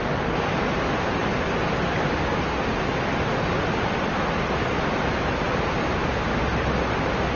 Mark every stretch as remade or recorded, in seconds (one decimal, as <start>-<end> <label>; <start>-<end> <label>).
0.0-4.9 recorded; 4.9-6.5 remade; 6.5-7.4 recorded